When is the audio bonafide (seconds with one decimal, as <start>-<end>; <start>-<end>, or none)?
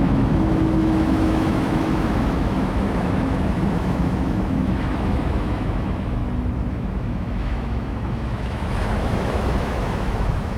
6.2-6.7